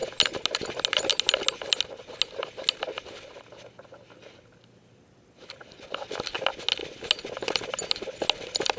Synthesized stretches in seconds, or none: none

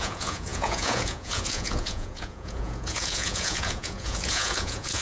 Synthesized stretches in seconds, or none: 0.0-5.0 (vocoder, Vocos)

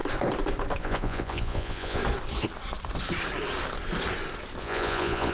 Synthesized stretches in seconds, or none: 0.8-2.0 (vocoder, Vocos); 4.6-5.3